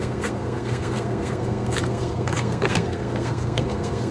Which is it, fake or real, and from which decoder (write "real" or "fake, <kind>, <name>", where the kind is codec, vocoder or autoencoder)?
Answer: fake, codec, SNAC